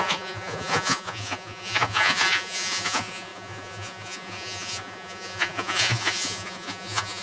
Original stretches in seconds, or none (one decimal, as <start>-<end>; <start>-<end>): none